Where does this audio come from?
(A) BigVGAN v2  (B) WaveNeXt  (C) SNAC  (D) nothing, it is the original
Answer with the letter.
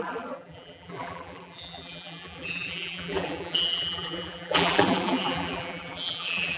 A